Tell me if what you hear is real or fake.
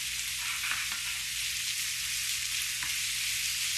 real